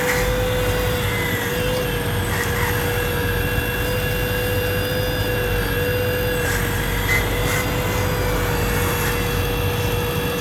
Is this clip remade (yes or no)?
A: no